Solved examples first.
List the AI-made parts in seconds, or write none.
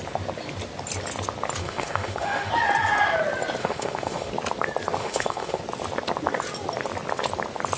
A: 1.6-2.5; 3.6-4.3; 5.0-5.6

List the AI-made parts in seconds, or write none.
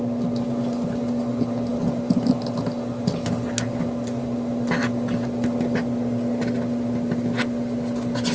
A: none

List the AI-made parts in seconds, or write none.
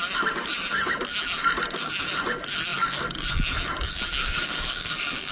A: 4.2-5.3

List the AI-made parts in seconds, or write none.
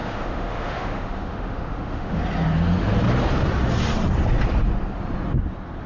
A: 0.0-2.2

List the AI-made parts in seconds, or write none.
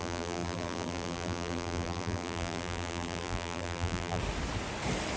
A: 0.0-4.2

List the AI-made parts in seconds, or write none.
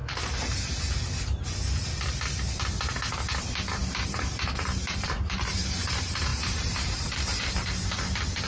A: 3.4-8.5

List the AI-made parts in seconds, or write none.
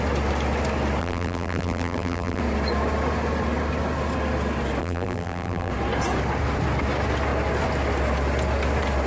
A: 1.0-2.4; 4.8-5.7